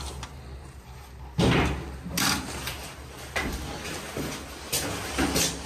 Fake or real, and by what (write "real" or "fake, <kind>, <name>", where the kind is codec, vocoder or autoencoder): real